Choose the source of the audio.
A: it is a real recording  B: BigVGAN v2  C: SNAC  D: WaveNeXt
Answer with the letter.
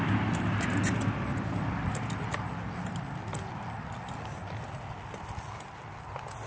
A